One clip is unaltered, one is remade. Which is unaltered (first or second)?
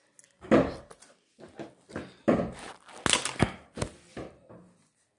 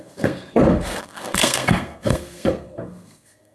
first